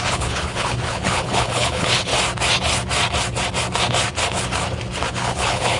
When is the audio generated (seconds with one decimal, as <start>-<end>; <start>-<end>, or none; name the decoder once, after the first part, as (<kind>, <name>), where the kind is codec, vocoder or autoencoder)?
0.0-2.1 (codec, HILCodec); 5.1-5.8